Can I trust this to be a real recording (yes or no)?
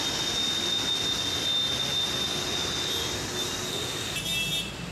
yes